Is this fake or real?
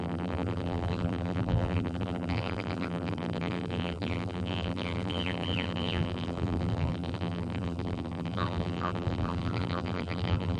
fake